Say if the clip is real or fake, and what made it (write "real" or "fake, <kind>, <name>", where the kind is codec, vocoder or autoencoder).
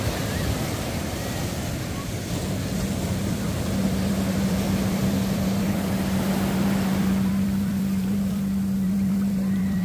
fake, vocoder, BigVGAN v2